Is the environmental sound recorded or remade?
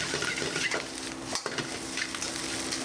recorded